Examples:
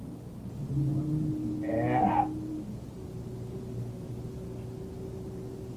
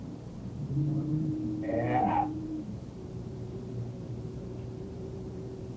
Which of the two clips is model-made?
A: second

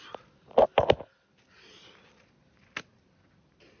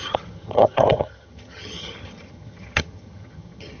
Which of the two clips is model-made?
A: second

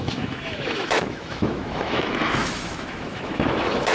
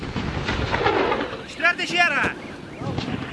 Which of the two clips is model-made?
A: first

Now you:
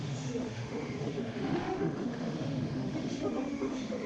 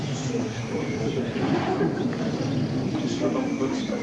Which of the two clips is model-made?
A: first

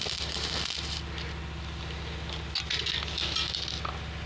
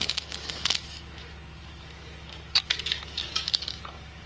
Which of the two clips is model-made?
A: second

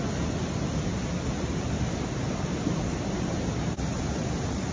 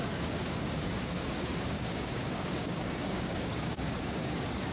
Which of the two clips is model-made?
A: second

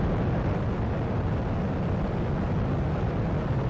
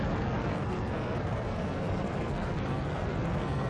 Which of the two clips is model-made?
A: second